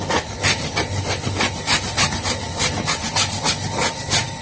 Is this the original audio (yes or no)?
yes